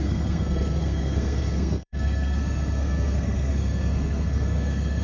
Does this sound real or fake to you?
fake